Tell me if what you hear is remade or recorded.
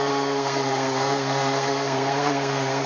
remade